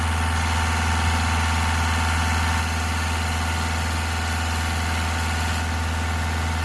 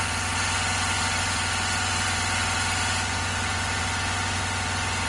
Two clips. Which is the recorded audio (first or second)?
first